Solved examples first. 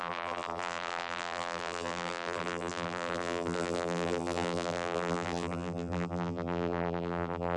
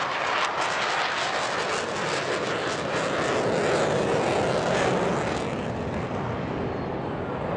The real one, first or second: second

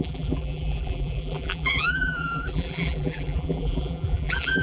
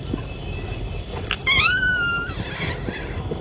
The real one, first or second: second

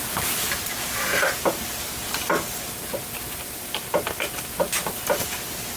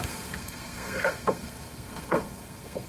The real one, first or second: first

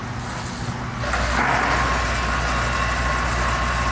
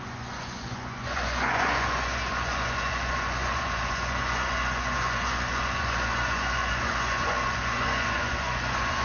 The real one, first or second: first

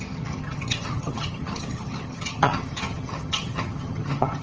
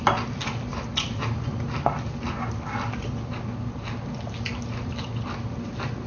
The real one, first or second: second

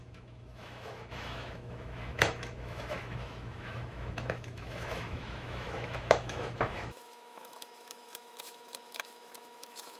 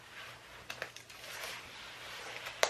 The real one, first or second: second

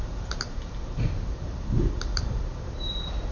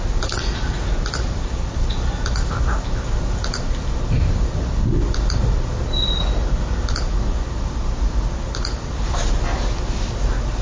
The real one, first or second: second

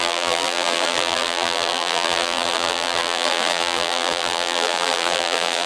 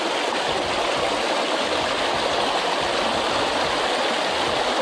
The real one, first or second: second